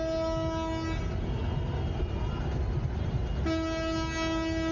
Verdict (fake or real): real